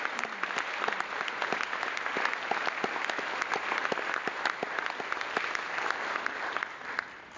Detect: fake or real real